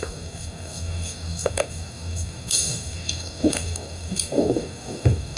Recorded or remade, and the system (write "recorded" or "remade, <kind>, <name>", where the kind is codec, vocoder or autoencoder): remade, codec, DAC